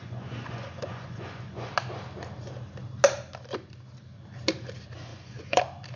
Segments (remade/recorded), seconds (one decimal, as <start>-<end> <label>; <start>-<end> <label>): 0.0-1.7 remade; 1.7-5.1 recorded; 5.1-5.6 remade; 5.6-6.0 recorded

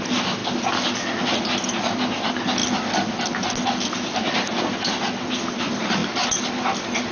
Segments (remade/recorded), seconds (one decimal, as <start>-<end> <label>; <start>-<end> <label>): 0.0-7.1 recorded